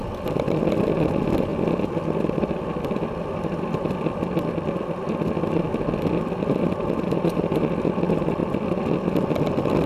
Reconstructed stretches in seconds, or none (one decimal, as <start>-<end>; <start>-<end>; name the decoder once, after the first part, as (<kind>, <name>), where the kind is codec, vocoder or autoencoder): none